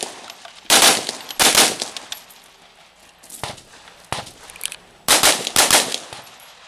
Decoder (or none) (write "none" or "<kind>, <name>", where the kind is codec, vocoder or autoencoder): none